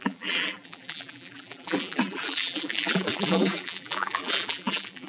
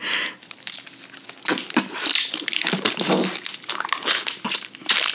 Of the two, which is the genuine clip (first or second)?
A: second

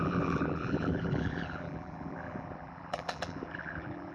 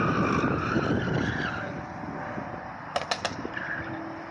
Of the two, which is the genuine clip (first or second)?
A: second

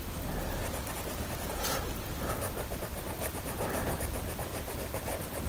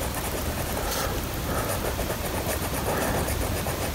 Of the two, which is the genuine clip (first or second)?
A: first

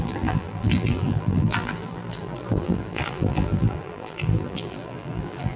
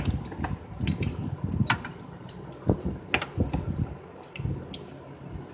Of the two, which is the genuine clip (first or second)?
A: second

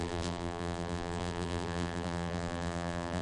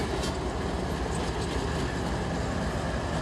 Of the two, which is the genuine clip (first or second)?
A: second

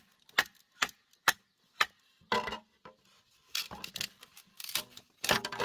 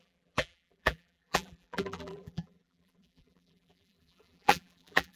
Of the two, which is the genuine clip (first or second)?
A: first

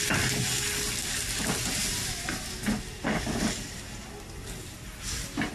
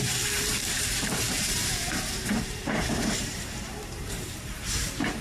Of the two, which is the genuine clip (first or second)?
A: first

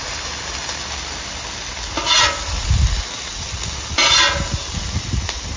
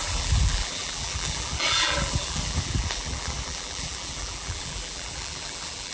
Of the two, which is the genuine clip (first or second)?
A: first